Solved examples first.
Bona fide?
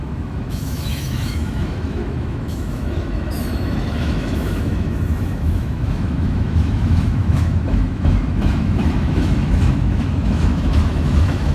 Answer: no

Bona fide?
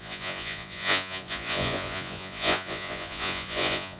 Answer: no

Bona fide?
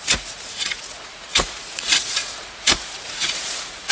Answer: no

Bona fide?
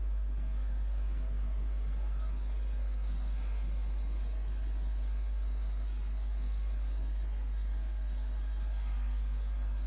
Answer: no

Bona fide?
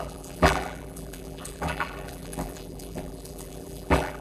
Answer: no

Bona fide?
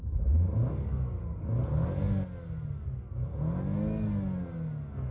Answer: yes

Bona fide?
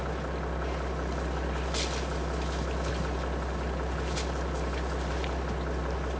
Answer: yes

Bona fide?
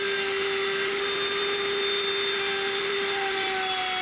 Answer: yes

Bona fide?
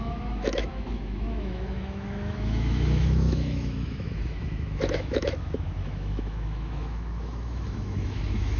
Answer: no